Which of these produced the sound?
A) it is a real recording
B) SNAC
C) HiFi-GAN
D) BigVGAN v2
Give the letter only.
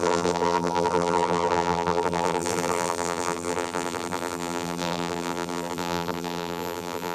D